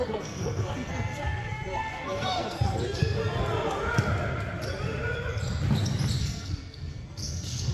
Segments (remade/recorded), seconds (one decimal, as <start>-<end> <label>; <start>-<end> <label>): 0.0-3.2 remade; 3.2-6.2 recorded; 6.2-7.7 remade